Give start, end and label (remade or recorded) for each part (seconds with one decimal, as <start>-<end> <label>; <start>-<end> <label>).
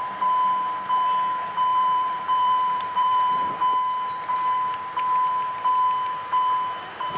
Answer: 0.0-1.7 recorded; 1.7-3.5 remade; 3.5-7.2 recorded